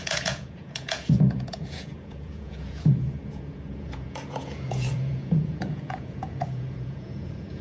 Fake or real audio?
fake